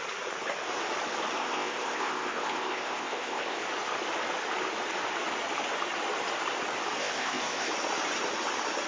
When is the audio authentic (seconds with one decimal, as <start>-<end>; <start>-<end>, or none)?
0.0-1.4; 3.6-7.0; 7.7-8.9